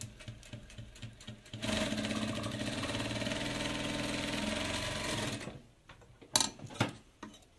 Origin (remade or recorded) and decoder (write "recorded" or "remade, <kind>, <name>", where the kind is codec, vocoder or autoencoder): recorded